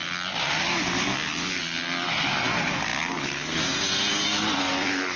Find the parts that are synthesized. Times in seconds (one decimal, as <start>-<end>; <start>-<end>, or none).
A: none